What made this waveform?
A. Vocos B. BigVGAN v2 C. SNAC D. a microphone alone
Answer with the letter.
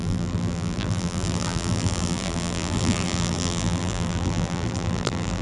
B